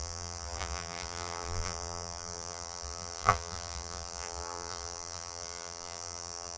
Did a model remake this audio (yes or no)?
yes